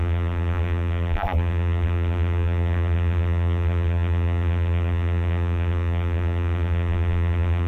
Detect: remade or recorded remade